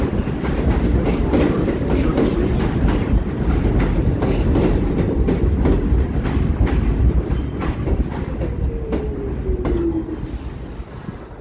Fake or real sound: real